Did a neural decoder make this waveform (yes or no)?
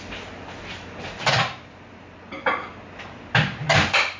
no